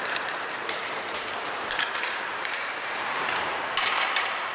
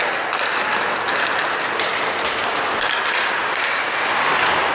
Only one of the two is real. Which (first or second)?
second